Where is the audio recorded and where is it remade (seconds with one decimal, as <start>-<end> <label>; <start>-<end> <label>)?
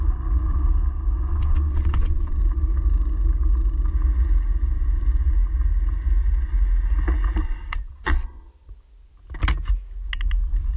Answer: 0.0-1.3 recorded; 1.3-2.4 remade; 2.4-7.4 recorded; 7.4-8.7 remade; 8.7-10.8 recorded